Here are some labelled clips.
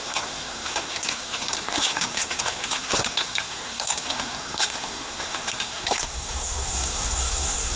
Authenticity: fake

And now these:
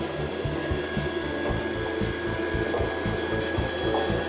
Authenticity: real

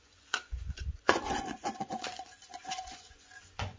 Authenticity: fake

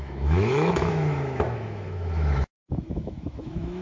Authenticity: fake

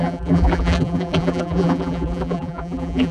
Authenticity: fake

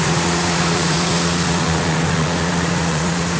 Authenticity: fake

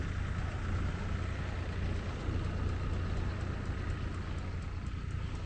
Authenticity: real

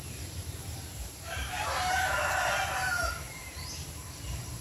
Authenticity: fake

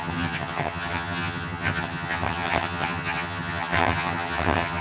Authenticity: fake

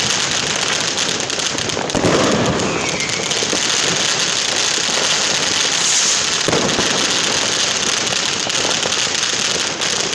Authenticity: real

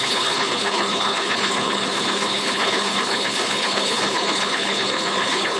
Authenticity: fake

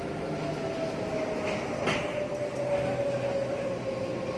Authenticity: real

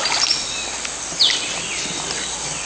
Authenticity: real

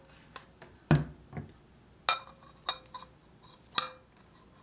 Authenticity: real